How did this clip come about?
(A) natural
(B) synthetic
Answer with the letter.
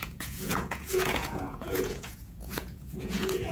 B